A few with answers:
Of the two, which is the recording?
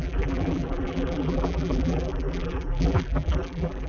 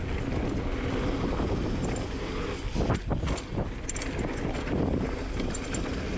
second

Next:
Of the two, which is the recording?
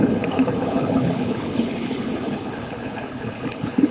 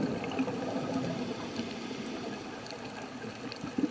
second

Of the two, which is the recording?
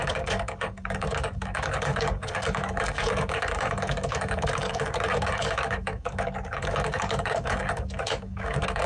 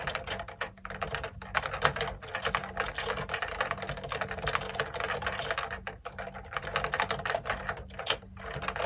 second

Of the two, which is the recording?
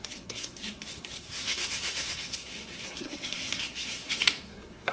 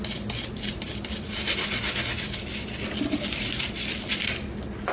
second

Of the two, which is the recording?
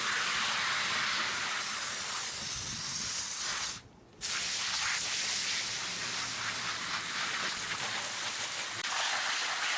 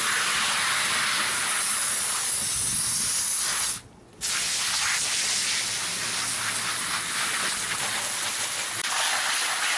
second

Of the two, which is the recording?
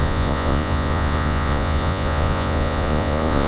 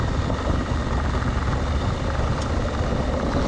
second